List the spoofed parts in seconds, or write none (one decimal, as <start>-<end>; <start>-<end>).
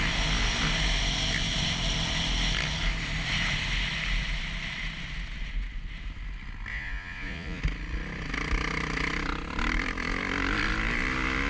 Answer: 6.7-7.6